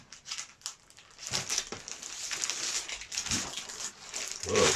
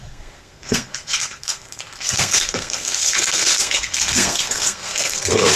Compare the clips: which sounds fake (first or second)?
second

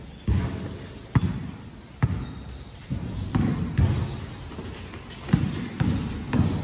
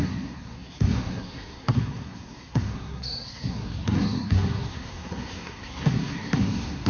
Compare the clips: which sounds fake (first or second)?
second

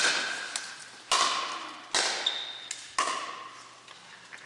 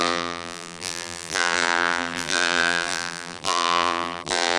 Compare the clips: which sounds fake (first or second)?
second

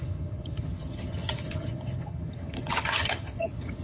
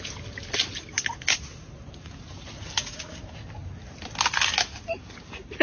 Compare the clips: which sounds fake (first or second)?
first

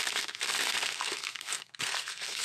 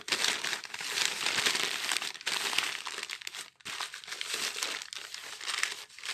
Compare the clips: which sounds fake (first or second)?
first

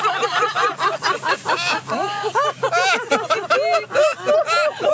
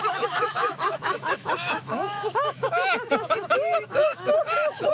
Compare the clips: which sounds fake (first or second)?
second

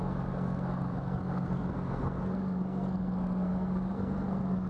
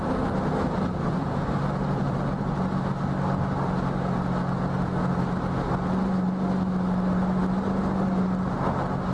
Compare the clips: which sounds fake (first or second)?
first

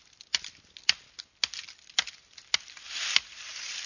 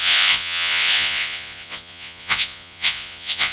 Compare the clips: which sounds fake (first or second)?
second